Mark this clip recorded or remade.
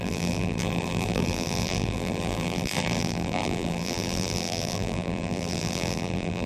remade